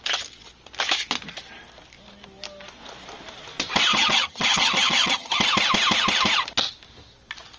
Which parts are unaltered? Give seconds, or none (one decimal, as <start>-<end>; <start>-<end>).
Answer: 0.0-3.9; 5.4-7.6

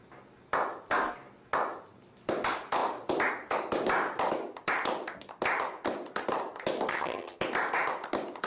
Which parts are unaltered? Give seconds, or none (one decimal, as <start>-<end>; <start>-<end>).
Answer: 0.0-6.9; 7.4-8.5